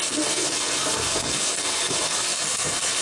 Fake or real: fake